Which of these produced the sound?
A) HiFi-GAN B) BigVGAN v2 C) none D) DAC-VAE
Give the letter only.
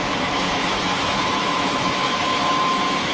D